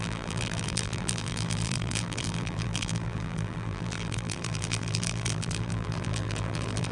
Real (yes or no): no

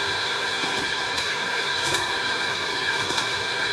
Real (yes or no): no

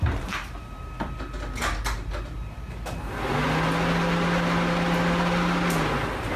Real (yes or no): yes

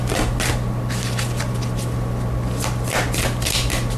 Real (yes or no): yes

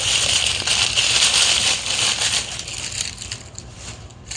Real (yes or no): no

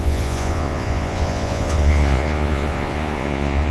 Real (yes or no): no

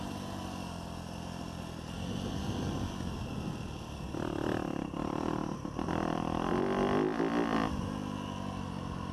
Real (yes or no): yes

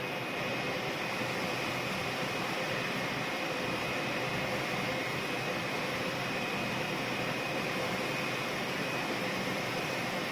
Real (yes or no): no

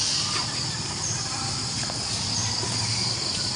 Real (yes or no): yes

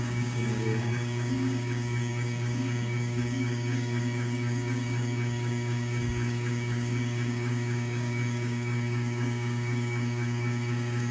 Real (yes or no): no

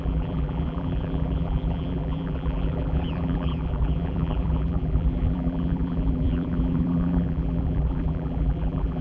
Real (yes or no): no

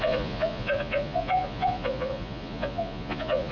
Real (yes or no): no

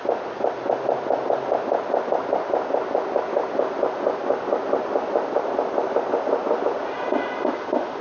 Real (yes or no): yes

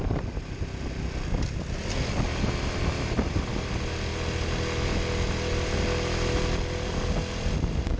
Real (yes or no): yes